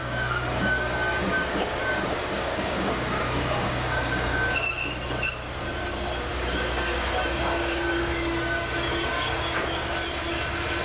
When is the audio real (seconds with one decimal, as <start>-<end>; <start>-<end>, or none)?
4.7-6.3; 9.9-10.8